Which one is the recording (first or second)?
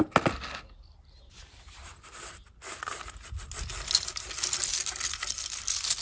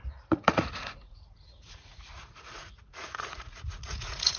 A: first